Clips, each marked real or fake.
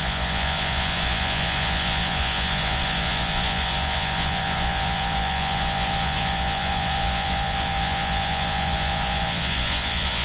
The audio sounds fake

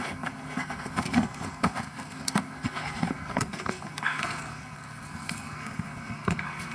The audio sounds fake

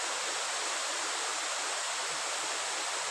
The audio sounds real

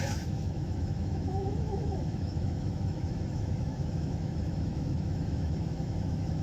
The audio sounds fake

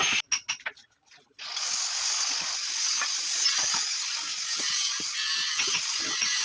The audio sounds real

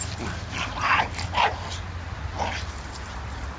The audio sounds real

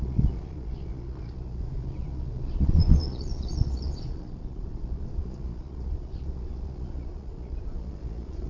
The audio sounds fake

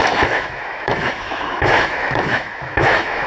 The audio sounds fake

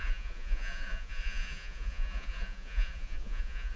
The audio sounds fake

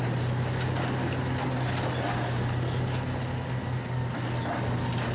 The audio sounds real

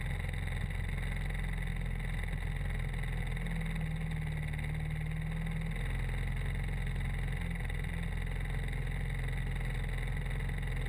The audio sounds real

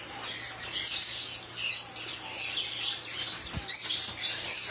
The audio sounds real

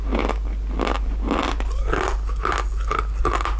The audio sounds real